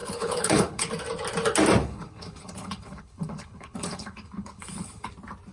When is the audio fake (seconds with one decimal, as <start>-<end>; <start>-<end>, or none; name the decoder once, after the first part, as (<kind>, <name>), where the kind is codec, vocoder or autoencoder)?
0.0-0.9 (codec, HILCodec); 1.8-5.1